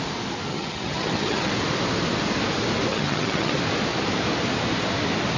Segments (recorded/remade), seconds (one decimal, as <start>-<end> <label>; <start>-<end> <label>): 0.0-0.5 recorded; 0.5-1.5 remade; 1.5-2.9 recorded; 2.9-3.5 remade; 3.5-5.4 recorded